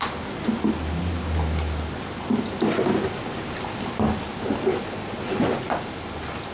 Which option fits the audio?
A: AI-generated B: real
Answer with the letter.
B